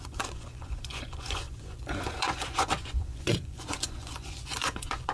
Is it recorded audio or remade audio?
remade